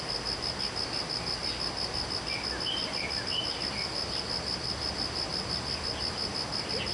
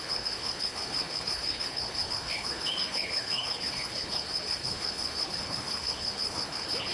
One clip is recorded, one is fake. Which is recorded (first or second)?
first